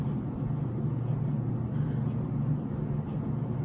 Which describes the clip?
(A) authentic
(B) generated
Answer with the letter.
A